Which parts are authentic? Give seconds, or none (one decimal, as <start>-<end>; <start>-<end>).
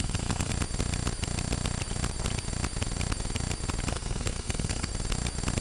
0.5-3.9; 4.9-5.6